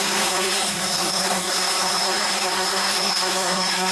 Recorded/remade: remade